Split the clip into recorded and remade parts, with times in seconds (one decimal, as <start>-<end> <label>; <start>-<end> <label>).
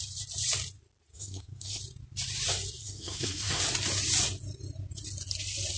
0.0-1.1 recorded; 1.1-1.8 remade; 1.8-2.8 recorded; 2.8-3.6 remade; 3.6-5.8 recorded